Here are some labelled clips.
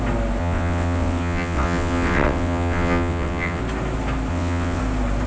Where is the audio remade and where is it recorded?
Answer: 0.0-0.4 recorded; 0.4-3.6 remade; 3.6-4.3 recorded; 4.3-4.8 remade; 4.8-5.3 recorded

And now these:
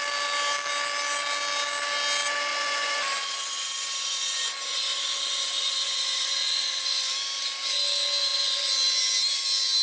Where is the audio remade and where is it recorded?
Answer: 0.0-2.5 recorded; 2.5-7.1 remade; 7.1-9.8 recorded

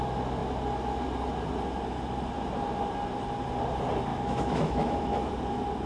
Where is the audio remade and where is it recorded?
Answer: 0.0-4.1 recorded; 4.1-5.3 remade; 5.3-5.9 recorded

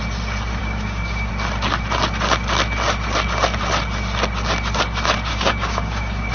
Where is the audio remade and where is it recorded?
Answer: 0.0-0.6 recorded; 0.6-1.3 remade; 1.3-5.3 recorded; 5.3-6.3 remade

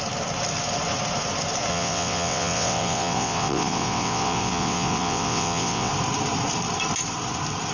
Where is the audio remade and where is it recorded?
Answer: 0.0-1.7 recorded; 1.7-5.9 remade; 5.9-7.7 recorded

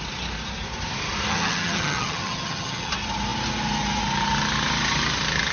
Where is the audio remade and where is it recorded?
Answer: 0.0-1.3 recorded; 1.3-2.9 remade; 2.9-5.5 recorded

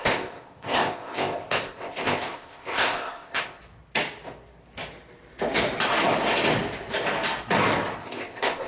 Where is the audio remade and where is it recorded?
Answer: 0.0-3.6 remade; 3.6-8.0 recorded; 8.0-8.7 remade

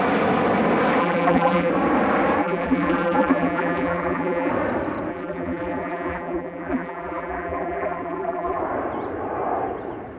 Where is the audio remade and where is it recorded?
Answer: 0.0-1.0 recorded; 1.0-1.7 remade; 1.7-2.4 recorded; 2.4-4.5 remade; 4.5-5.1 recorded; 5.1-8.6 remade; 8.6-10.2 recorded